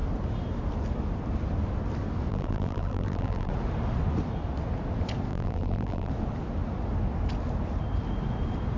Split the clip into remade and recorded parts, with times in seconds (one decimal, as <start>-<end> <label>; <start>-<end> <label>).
0.0-2.3 recorded; 2.3-3.5 remade; 3.5-5.3 recorded; 5.3-6.1 remade; 6.1-8.8 recorded